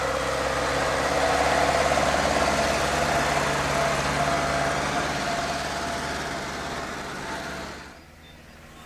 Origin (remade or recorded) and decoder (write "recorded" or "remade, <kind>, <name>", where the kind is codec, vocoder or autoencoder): recorded